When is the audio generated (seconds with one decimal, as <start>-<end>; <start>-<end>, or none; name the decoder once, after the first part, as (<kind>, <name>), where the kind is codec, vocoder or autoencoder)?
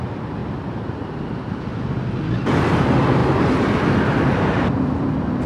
3.2-4.4 (vocoder, BigVGAN v2)